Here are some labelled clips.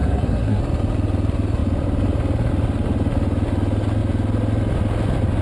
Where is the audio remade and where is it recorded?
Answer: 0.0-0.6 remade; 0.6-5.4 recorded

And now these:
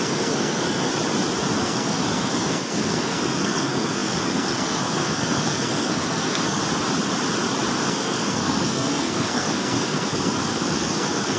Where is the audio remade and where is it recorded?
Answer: 0.0-0.9 remade; 0.9-1.6 recorded; 1.6-6.6 remade; 6.6-7.8 recorded; 7.8-11.4 remade

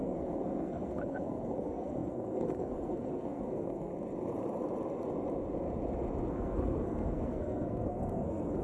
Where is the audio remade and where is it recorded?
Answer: 0.0-3.9 remade; 3.9-6.3 recorded; 6.3-8.6 remade

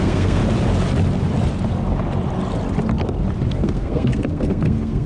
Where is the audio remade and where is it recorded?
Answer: 0.0-0.4 remade; 0.4-3.5 recorded; 3.5-5.1 remade

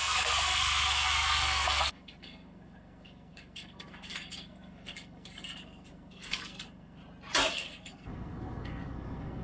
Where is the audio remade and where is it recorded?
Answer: 0.0-7.0 remade; 7.0-7.5 recorded; 7.5-9.4 remade

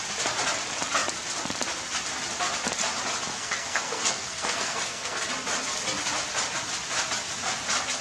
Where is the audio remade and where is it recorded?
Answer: 0.0-3.3 recorded; 3.3-5.3 remade; 5.3-8.0 recorded